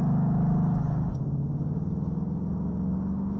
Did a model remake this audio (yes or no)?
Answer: no